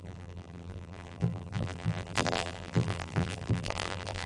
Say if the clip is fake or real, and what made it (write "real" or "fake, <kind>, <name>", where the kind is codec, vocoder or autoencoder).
fake, vocoder, BigVGAN v2